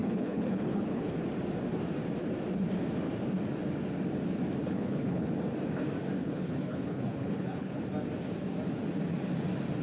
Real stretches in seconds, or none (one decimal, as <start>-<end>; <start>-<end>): 1.1-4.6; 5.3-6.2; 7.8-9.8